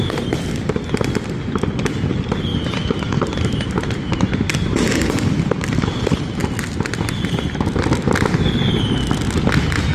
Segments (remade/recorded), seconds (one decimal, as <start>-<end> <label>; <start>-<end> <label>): 0.0-2.5 recorded; 2.5-5.1 remade; 5.1-9.9 recorded